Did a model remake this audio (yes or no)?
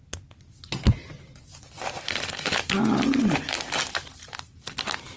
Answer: no